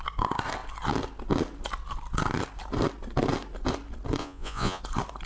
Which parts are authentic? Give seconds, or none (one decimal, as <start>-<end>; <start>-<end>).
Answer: 0.0-4.2; 4.8-5.3